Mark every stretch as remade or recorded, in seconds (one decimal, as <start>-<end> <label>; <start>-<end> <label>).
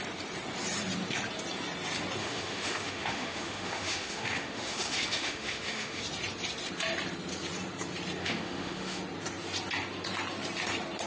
0.0-2.2 recorded; 2.2-6.0 remade; 6.0-8.2 recorded; 8.2-9.0 remade; 9.0-11.1 recorded